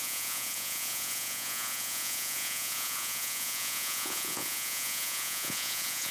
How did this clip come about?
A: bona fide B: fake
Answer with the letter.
B